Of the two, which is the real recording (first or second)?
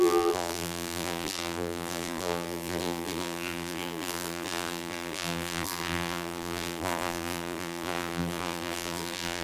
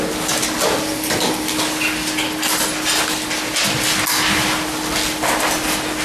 second